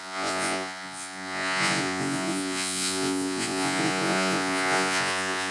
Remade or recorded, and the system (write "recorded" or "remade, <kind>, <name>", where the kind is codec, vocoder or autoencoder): remade, vocoder, Vocos